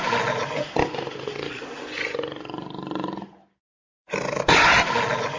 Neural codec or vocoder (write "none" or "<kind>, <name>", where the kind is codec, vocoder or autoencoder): none